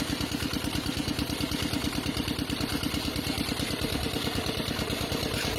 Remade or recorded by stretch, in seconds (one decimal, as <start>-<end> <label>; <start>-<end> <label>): 0.0-5.6 recorded

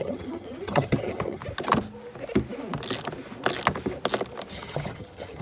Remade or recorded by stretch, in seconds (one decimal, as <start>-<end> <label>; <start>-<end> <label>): 0.0-1.4 remade; 1.4-4.5 recorded; 4.5-5.4 remade

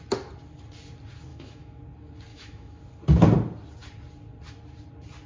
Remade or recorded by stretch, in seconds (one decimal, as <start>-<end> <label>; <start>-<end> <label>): 0.0-1.3 recorded; 1.3-1.8 remade; 1.8-2.3 recorded; 2.3-2.8 remade; 2.8-5.3 recorded

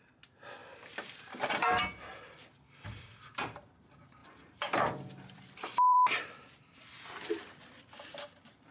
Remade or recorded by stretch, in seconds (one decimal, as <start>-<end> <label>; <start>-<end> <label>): 0.0-0.6 recorded; 0.6-1.5 remade; 1.5-4.2 recorded; 4.2-8.2 remade; 8.2-8.7 recorded

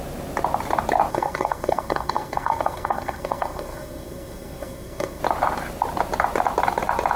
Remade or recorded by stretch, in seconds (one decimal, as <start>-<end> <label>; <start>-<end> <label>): 0.0-1.1 recorded; 1.1-5.2 remade; 5.2-7.2 recorded

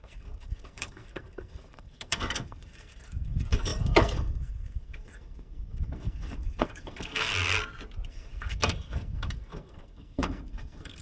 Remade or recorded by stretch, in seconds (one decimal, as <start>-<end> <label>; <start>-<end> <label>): 0.0-7.3 remade; 7.3-8.1 recorded; 8.1-11.0 remade

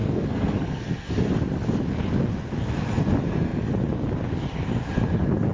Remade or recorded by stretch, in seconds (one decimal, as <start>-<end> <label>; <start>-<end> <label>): 0.0-1.3 remade; 1.3-5.5 recorded

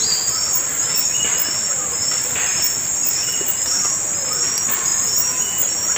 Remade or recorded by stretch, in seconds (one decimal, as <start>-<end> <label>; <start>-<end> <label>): 0.0-6.0 recorded